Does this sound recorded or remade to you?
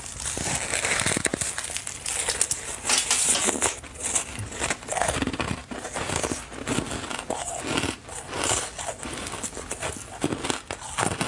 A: recorded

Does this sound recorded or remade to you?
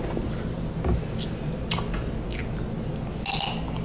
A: recorded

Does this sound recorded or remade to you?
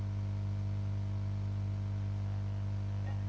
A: recorded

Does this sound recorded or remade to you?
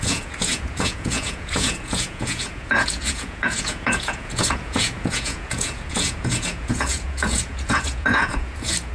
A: remade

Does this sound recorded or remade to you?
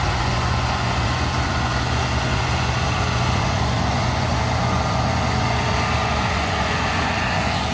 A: remade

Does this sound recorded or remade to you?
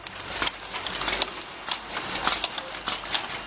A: recorded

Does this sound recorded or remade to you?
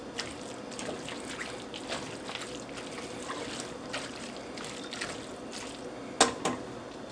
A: recorded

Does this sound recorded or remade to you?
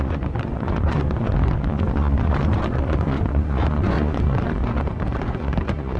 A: remade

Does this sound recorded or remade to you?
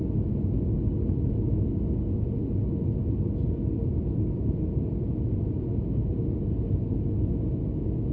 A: recorded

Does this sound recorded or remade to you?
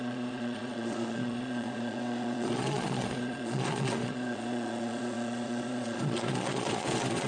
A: remade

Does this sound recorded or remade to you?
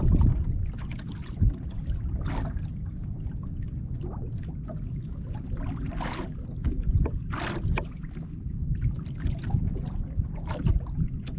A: recorded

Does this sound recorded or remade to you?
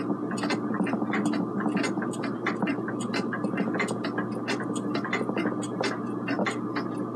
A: recorded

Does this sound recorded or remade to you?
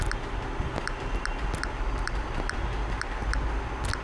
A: recorded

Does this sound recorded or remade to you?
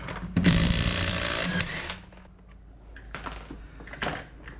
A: recorded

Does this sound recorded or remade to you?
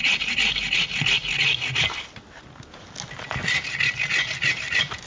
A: recorded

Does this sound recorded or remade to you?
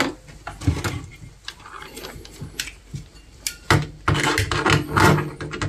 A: recorded